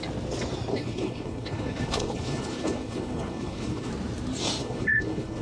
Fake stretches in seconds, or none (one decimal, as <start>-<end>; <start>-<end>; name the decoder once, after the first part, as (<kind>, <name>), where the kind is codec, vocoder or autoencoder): 0.7-3.9 (codec, HILCodec); 4.6-5.4